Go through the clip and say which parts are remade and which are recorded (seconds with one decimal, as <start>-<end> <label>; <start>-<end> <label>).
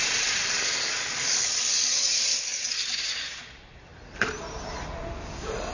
0.0-5.7 recorded